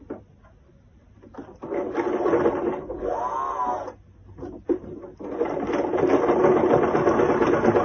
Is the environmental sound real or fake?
real